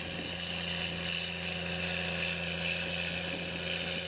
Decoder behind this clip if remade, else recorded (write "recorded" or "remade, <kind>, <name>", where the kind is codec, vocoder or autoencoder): recorded